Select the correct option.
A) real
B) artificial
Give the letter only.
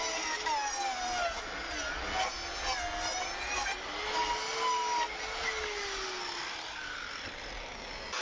A